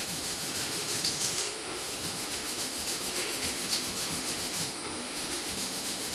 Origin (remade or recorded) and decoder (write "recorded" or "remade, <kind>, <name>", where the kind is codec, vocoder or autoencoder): remade, autoencoder, DAC-VAE